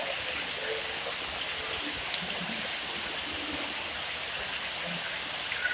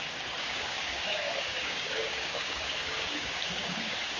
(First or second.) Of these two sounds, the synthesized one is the second